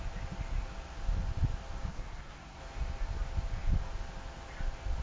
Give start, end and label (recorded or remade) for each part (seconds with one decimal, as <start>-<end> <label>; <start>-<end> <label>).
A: 0.0-1.9 recorded; 1.9-2.6 remade; 2.6-5.0 recorded